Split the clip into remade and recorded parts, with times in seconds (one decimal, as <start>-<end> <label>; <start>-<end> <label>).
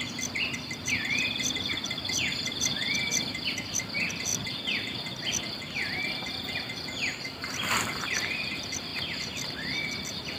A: 0.0-4.3 remade; 4.3-7.2 recorded; 7.2-8.9 remade; 8.9-10.4 recorded